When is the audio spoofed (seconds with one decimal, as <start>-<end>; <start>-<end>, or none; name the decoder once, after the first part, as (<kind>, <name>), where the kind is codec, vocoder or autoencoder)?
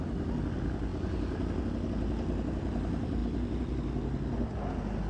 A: none